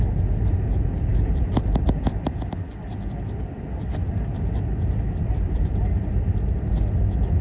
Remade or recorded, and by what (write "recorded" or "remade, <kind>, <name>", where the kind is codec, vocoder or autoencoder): recorded